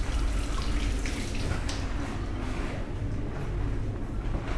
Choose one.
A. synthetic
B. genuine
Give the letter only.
B